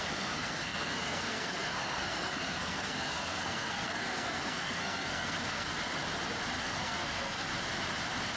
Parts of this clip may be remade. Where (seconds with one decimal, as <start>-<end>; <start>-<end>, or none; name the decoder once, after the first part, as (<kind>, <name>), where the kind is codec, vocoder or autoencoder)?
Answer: 0.0-5.7 (codec, SNAC); 6.6-7.5